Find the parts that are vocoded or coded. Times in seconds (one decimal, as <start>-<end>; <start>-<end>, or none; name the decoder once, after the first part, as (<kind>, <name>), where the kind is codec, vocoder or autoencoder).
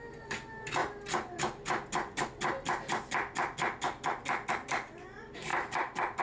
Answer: 5.5-6.2 (vocoder, BigVGAN v2)